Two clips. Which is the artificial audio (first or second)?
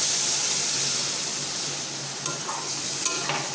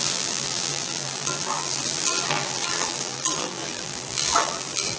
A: second